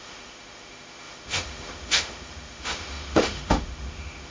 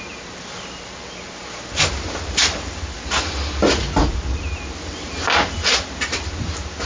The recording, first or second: second